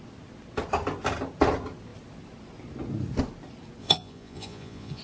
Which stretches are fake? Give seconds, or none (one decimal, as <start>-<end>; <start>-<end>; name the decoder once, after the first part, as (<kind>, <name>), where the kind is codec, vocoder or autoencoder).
3.8-5.0 (vocoder, Vocos)